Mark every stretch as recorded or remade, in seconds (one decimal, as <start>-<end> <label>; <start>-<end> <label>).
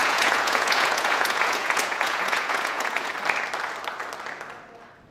0.0-3.1 remade; 3.1-5.1 recorded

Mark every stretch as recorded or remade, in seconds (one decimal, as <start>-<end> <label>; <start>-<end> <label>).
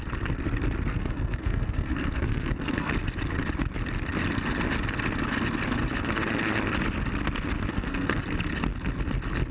0.0-0.9 recorded; 0.9-2.9 remade; 2.9-7.7 recorded; 7.7-8.2 remade; 8.2-9.5 recorded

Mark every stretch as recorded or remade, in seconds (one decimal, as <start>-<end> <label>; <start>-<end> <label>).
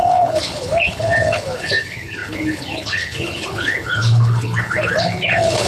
0.0-5.7 remade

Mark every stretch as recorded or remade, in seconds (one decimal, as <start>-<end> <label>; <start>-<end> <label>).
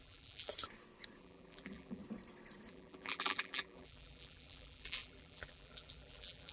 0.0-0.5 remade; 0.5-1.2 recorded; 1.2-2.0 remade; 2.0-2.7 recorded; 2.7-6.5 remade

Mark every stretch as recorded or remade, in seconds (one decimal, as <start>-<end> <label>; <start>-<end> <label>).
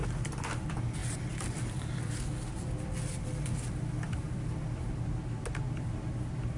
0.0-0.5 remade; 0.5-1.0 recorded; 1.0-5.0 remade; 5.0-6.6 recorded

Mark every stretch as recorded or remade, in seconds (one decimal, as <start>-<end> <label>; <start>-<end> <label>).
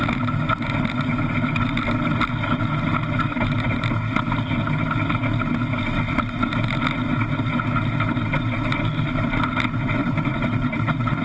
0.0-10.0 recorded; 10.0-11.2 remade